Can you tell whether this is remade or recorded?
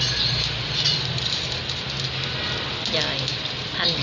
recorded